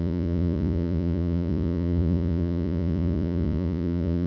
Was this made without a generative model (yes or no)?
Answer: no